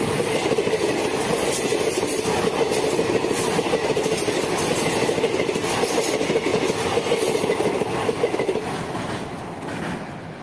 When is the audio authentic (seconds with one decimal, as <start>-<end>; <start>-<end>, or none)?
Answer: 0.0-10.4